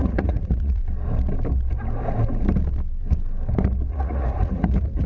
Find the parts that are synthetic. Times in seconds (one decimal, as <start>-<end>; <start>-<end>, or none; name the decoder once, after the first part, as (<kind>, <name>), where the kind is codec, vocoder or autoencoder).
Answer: 0.0-0.8 (vocoder, Vocos); 3.9-5.1